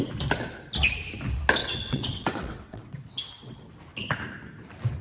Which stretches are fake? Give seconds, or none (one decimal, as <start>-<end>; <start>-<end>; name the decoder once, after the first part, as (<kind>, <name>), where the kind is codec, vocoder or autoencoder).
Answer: 1.6-3.6 (vocoder, WaveNeXt)